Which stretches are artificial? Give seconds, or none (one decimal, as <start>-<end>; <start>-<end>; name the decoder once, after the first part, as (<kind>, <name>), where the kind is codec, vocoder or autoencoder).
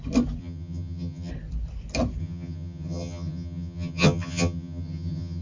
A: 0.4-1.3 (vocoder, HiFi-GAN); 2.2-5.4